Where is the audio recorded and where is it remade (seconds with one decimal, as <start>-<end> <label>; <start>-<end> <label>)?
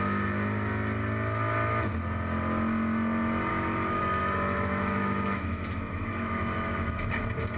0.0-3.5 recorded; 3.5-7.1 remade; 7.1-7.6 recorded